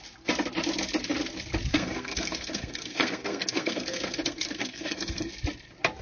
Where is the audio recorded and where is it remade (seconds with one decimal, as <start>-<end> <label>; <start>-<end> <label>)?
0.0-1.7 recorded; 1.7-5.3 remade; 5.3-6.0 recorded

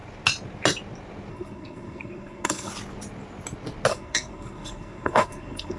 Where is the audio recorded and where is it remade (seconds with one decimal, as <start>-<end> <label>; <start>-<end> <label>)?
0.0-1.3 recorded; 1.3-2.7 remade; 2.7-3.9 recorded; 3.9-5.8 remade